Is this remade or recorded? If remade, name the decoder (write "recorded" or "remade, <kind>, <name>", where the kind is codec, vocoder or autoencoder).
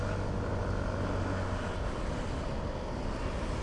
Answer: recorded